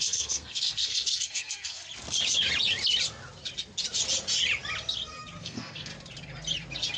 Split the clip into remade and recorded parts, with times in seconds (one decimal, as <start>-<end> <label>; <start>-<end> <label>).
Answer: 0.0-1.8 remade; 1.8-5.4 recorded; 5.4-5.9 remade; 5.9-7.0 recorded